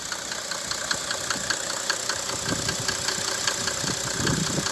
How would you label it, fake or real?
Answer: real